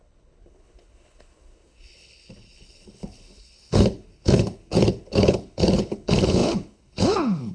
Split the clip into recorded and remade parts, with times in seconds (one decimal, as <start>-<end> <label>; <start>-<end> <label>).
0.0-7.5 remade